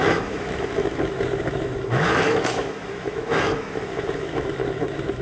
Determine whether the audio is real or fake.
fake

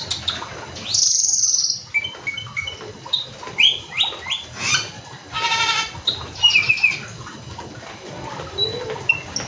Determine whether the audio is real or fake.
real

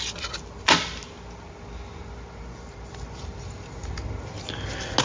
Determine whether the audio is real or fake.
real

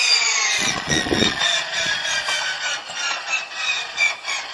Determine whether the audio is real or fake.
fake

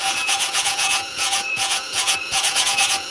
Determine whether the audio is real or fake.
fake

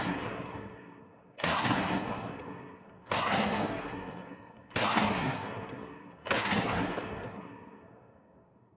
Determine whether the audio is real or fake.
fake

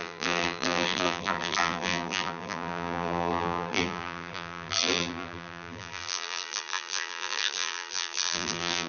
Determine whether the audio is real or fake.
fake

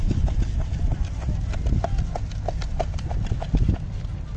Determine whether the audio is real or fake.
real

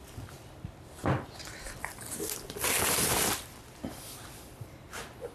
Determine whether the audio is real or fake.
real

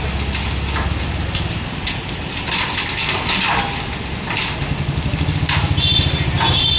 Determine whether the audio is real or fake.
real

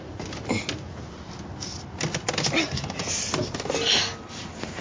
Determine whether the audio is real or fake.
real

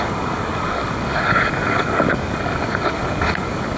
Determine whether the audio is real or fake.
fake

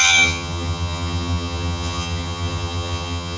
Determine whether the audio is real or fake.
fake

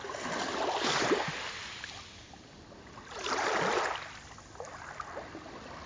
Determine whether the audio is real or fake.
real